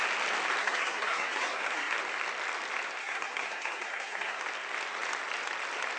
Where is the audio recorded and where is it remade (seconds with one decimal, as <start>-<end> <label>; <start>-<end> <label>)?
0.0-0.6 recorded; 0.6-2.0 remade; 2.0-3.0 recorded; 3.0-4.4 remade; 4.4-6.0 recorded